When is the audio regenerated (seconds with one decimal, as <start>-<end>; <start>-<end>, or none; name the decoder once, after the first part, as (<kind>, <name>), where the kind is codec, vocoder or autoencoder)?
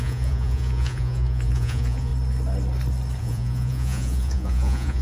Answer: 0.0-2.1 (vocoder, Vocos); 3.2-5.0